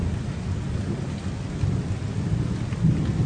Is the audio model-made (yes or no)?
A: no